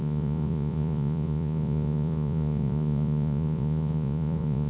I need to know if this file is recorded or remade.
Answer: remade